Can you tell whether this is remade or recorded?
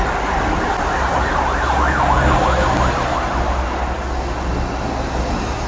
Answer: recorded